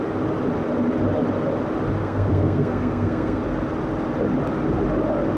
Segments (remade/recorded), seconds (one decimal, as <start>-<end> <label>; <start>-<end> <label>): 0.0-2.0 recorded; 2.0-3.4 remade; 3.4-5.4 recorded